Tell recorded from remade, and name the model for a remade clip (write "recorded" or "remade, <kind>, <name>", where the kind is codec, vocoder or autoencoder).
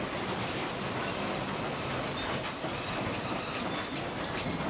recorded